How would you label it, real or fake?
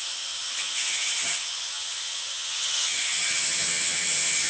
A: fake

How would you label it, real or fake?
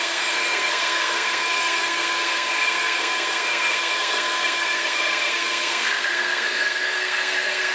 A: fake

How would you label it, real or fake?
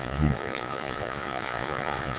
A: fake